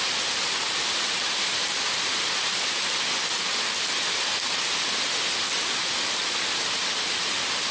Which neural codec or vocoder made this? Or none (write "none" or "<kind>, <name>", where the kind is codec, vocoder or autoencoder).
none